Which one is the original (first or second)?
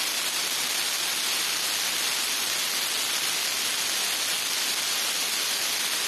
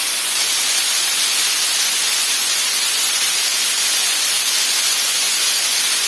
first